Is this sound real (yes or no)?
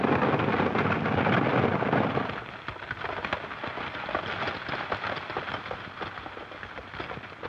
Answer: yes